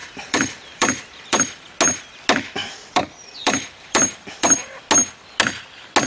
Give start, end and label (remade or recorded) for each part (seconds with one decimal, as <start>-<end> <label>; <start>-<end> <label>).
0.0-1.7 remade; 1.7-2.6 recorded; 2.6-4.8 remade; 4.8-6.1 recorded